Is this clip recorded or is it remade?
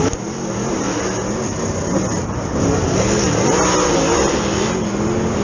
recorded